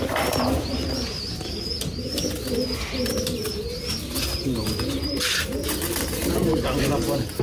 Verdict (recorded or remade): recorded